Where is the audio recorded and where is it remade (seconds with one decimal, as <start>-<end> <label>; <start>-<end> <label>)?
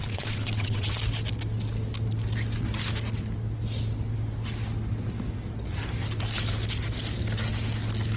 0.0-0.9 remade; 0.9-8.2 recorded